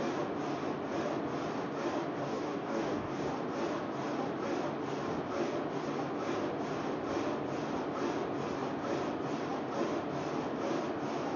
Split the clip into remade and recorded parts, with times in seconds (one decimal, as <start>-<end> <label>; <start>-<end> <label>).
0.0-2.2 recorded; 2.2-3.3 remade; 3.3-11.4 recorded